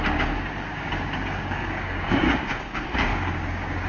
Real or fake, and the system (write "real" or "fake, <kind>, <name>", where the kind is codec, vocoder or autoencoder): fake, codec, DAC